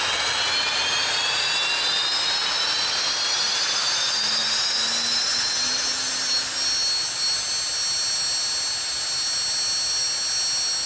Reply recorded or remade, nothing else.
recorded